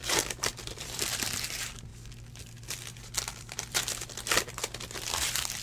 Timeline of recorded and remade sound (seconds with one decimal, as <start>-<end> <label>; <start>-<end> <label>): 0.0-1.9 remade; 1.9-3.4 recorded; 3.4-5.6 remade